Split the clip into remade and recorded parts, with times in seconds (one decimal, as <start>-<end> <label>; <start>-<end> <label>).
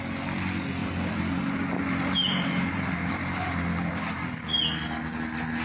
0.0-0.8 recorded; 0.8-4.0 remade; 4.0-5.6 recorded